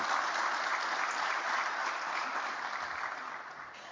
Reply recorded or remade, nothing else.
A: recorded